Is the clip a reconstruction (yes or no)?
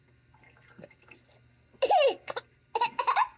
no